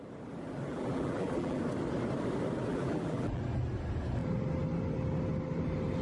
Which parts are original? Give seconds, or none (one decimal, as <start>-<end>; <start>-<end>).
0.0-0.7; 1.6-2.7; 3.4-6.0

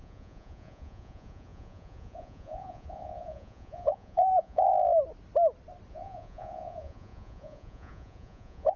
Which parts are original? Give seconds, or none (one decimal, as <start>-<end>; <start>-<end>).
4.7-5.9

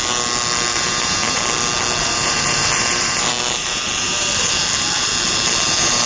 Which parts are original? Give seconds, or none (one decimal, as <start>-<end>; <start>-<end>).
0.0-0.7; 1.4-2.0

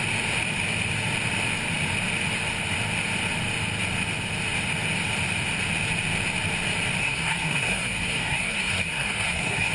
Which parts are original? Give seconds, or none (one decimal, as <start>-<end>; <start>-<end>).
0.0-7.0

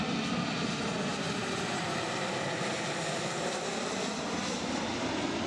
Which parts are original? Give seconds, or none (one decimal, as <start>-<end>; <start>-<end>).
0.0-1.1; 4.3-5.5